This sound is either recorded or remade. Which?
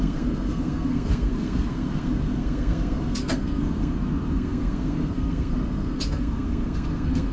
remade